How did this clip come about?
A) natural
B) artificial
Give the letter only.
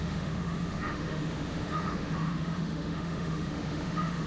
B